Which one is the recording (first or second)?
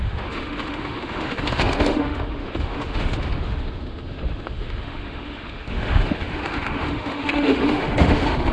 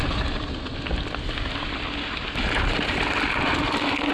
second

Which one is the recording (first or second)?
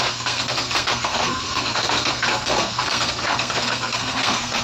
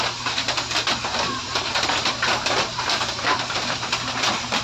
second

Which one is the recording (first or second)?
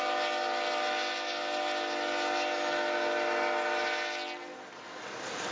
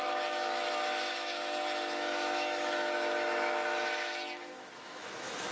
first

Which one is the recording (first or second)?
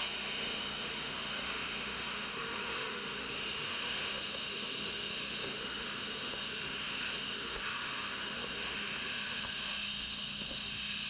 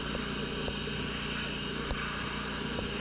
second